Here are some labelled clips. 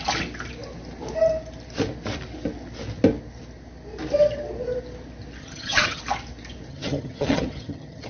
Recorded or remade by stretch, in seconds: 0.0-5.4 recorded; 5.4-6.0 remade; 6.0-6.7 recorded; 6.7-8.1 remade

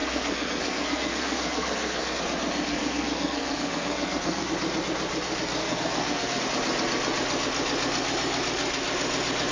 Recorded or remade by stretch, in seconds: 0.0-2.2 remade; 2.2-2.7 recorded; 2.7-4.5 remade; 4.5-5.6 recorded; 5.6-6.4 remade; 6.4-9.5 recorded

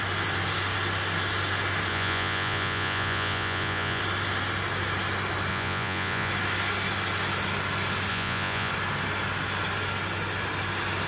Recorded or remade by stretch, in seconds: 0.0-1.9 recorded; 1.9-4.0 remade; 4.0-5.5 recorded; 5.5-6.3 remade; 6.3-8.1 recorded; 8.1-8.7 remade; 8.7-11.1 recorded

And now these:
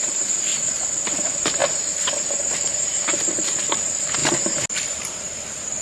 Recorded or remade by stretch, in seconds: 0.0-0.5 remade; 0.5-1.1 recorded; 1.1-4.2 remade; 4.2-4.9 recorded; 4.9-5.8 remade

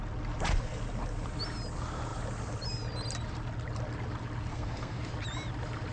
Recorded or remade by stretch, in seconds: 0.0-4.5 recorded; 4.5-5.0 remade; 5.0-5.9 recorded

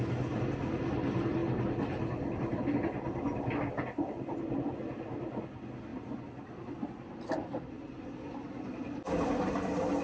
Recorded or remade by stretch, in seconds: 0.0-10.0 recorded

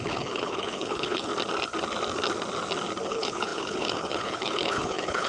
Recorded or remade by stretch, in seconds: 0.0-1.3 remade; 1.3-3.1 recorded; 3.1-5.3 remade